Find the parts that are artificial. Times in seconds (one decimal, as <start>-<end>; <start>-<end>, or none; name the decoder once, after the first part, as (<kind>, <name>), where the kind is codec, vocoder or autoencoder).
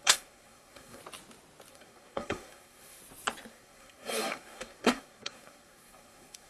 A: 0.0-1.0 (codec, SNAC); 1.7-3.0; 3.5-6.5